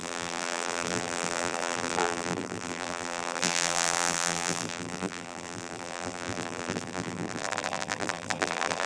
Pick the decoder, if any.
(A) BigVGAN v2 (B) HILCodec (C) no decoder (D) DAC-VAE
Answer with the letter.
A